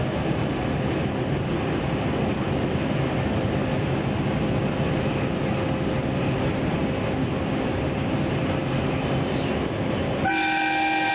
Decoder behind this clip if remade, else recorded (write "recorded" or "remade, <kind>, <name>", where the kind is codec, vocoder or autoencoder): recorded